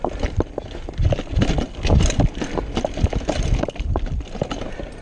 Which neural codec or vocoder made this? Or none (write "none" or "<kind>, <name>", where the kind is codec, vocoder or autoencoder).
none